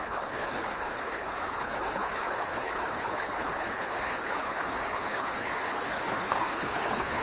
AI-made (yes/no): yes